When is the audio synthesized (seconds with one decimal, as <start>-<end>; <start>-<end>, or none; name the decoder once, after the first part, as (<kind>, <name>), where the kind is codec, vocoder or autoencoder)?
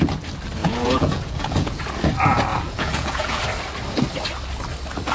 0.6-1.8 (vocoder, Vocos); 2.5-3.4